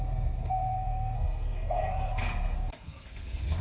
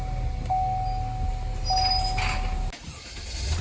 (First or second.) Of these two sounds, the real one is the second